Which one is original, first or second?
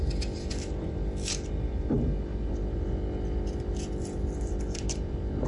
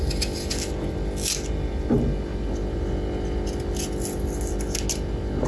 second